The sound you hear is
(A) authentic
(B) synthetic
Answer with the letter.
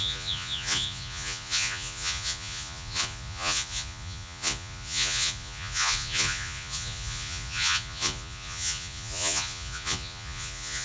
B